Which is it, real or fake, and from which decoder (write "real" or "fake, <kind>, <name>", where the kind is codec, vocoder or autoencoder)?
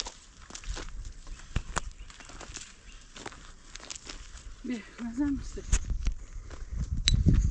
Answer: real